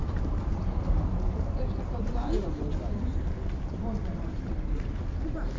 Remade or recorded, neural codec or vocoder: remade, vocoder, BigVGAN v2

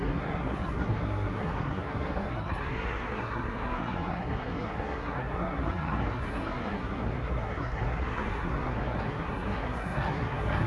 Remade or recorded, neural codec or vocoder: remade, codec, SNAC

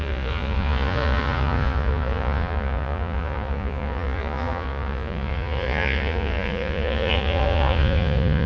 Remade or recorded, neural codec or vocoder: remade, vocoder, Vocos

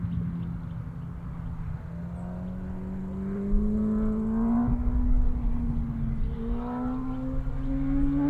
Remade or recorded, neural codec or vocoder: recorded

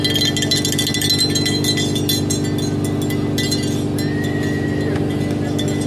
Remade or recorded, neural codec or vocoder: recorded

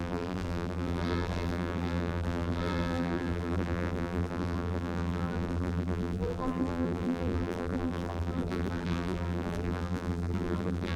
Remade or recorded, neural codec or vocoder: remade, vocoder, BigVGAN v2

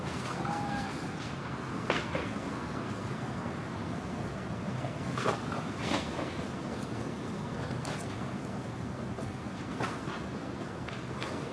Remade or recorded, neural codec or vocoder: remade, codec, SNAC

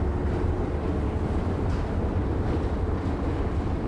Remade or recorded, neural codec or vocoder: recorded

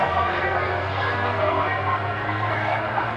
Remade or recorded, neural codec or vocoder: remade, codec, SNAC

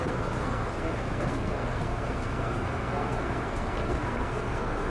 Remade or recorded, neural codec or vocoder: remade, codec, SNAC